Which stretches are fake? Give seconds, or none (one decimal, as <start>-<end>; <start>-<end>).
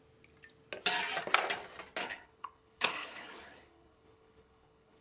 2.0-5.0